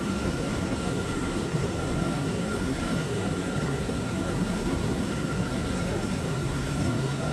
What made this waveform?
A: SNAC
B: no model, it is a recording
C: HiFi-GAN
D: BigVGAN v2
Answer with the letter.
A